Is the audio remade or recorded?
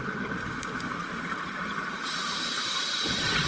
remade